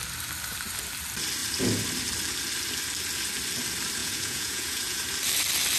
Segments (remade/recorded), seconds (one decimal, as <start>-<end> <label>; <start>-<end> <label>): 0.0-4.0 recorded; 4.0-5.0 remade; 5.0-5.8 recorded